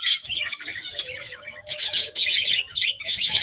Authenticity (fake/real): fake